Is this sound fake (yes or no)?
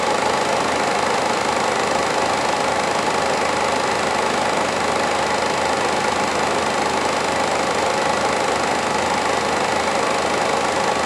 no